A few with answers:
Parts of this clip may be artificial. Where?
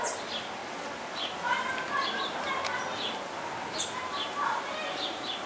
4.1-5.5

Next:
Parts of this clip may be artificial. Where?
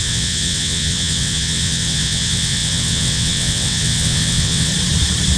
0.0-4.7